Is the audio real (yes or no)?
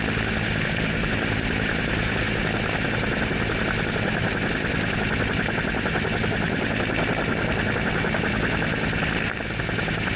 yes